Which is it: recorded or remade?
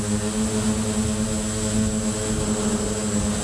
recorded